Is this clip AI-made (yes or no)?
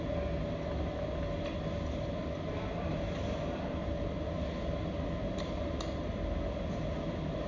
no